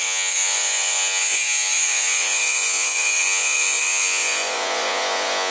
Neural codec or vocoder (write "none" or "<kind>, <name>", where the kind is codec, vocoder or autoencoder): vocoder, Vocos